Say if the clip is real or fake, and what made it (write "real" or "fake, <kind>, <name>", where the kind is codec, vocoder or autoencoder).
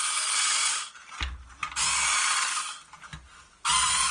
real